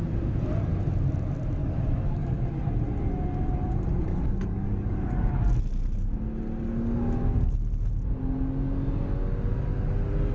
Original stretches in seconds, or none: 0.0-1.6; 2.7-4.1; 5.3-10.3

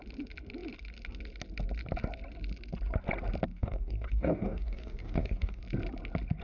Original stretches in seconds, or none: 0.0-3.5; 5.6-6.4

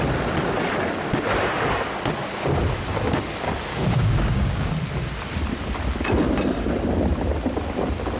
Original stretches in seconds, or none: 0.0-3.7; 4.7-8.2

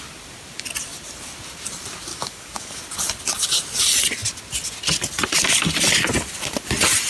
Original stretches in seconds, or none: 0.0-2.1; 2.8-7.1

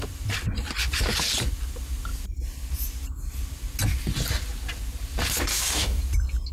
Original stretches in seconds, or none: 0.0-5.5; 6.0-6.5

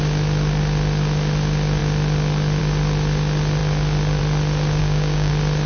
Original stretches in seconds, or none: 0.0-4.8; 5.3-5.7

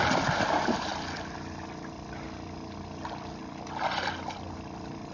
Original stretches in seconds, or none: 0.0-5.1